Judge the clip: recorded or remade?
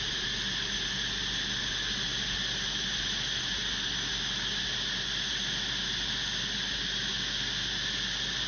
recorded